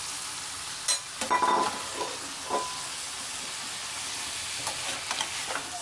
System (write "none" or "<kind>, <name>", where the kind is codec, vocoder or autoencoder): none